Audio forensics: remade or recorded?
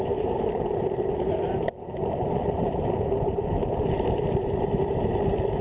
remade